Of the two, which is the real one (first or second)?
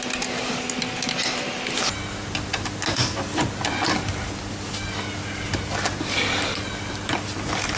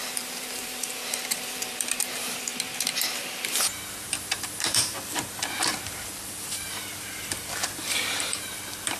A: first